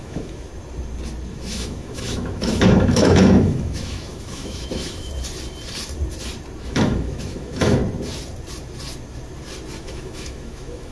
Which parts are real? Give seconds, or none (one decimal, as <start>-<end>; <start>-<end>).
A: 0.5-1.3; 5.1-6.6; 7.8-9.8